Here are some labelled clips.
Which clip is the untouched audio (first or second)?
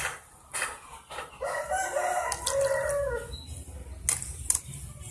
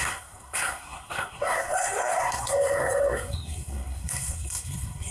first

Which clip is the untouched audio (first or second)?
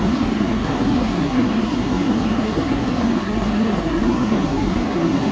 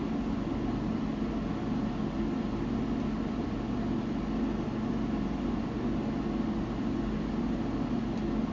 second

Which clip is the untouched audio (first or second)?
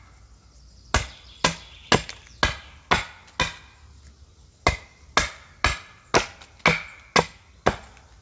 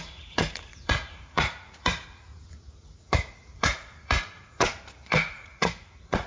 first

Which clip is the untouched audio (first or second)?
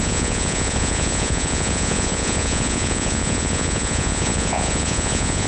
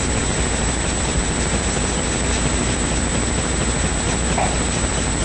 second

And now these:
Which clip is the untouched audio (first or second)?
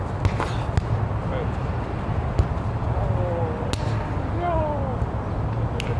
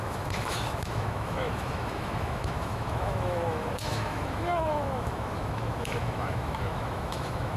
first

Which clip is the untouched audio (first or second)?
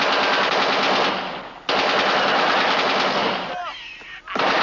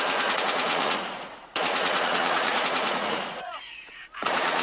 first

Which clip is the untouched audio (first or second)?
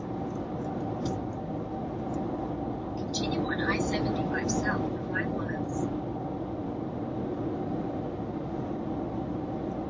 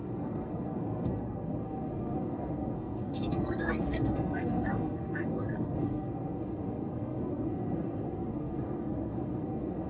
first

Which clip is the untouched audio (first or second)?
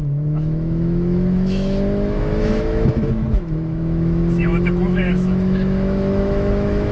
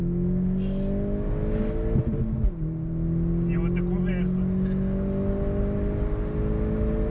second